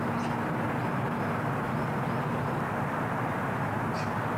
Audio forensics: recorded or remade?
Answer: recorded